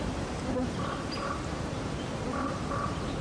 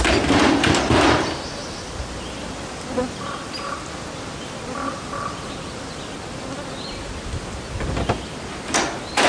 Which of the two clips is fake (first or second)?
first